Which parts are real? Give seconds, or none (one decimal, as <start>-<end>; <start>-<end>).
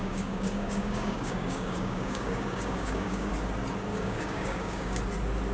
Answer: 3.3-3.9; 5.0-5.5